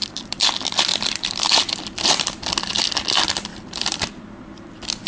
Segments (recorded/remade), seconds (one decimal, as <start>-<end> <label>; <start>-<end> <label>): 0.0-0.5 remade; 0.5-0.9 recorded; 0.9-2.5 remade; 2.5-3.5 recorded; 3.5-4.0 remade; 4.0-5.1 recorded